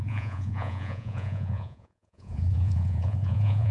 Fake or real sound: fake